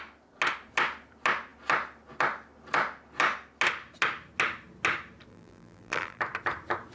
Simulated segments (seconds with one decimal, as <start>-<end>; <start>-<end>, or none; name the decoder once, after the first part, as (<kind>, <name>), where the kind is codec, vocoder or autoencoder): 5.3-6.2 (vocoder, BigVGAN v2)